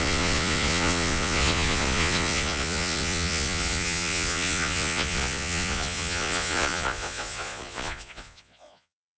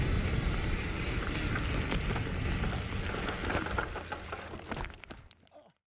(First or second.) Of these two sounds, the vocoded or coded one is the first